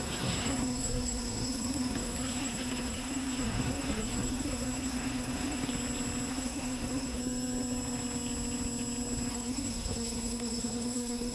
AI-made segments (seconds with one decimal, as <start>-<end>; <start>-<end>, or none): 0.0-5.7; 6.3-7.2; 9.3-11.3